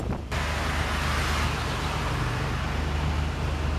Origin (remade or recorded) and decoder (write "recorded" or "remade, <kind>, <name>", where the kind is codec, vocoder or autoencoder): recorded